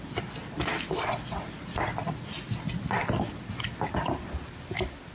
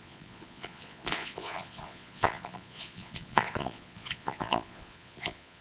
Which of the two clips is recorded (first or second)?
first